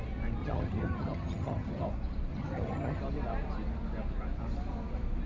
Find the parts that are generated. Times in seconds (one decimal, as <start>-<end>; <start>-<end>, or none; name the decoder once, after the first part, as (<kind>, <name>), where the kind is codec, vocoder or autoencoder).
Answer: 0.4-1.9 (vocoder, HiFi-GAN); 2.3-3.0